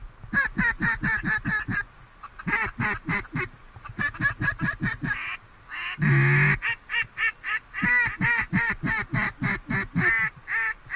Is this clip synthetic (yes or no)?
no